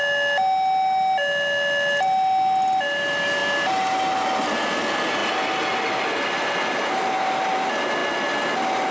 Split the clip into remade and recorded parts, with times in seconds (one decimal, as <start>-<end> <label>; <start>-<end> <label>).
0.0-8.9 recorded